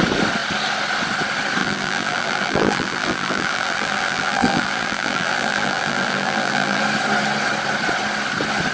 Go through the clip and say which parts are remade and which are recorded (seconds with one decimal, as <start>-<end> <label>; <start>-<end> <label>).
0.0-1.6 recorded; 1.6-6.8 remade; 6.8-8.7 recorded